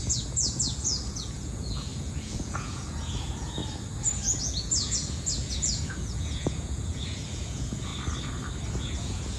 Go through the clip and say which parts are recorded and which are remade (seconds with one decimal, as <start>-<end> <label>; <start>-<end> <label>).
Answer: 0.0-3.6 remade; 3.6-4.4 recorded; 4.4-7.9 remade; 7.9-8.7 recorded; 8.7-9.4 remade